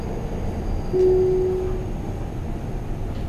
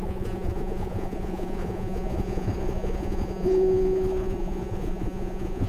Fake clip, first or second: second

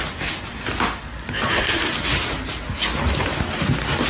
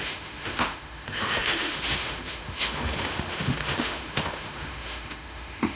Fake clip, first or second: second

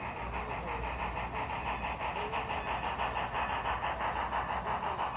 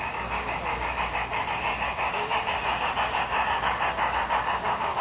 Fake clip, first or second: second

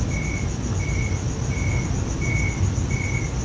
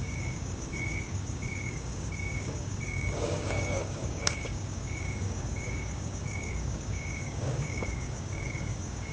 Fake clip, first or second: second